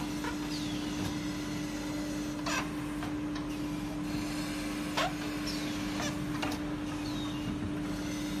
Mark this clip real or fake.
real